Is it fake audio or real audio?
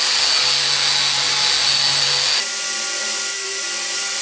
real